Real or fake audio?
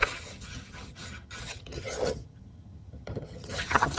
fake